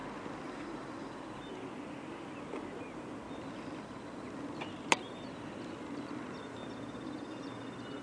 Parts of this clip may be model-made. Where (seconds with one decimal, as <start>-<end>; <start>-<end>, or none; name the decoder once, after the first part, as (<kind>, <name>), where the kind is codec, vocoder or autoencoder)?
none